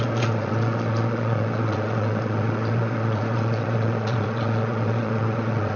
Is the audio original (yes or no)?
no